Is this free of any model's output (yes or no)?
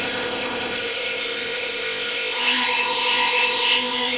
no